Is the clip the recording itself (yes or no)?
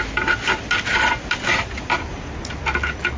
yes